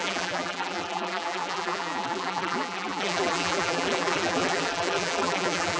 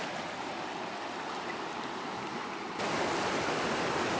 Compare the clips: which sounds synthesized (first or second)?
first